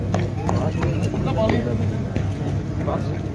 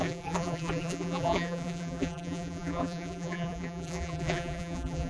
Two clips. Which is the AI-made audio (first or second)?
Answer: second